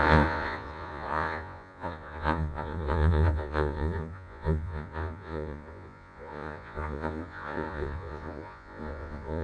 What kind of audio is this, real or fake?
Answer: fake